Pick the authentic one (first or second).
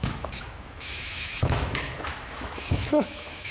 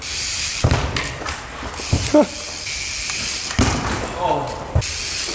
second